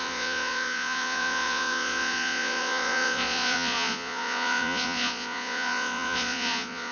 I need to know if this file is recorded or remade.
remade